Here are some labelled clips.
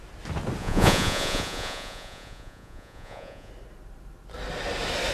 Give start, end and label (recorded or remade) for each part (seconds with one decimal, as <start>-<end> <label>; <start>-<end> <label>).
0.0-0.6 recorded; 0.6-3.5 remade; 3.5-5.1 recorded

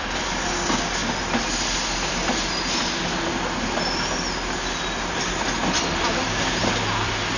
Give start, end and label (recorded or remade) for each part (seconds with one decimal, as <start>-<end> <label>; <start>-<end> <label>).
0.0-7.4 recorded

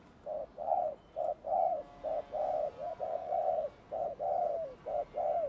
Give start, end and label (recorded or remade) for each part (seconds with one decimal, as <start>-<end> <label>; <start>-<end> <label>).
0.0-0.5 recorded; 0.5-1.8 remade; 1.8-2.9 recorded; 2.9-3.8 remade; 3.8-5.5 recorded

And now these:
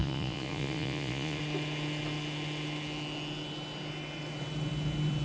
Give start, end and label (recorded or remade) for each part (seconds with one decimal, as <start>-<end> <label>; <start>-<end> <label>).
0.0-1.4 remade; 1.4-5.2 recorded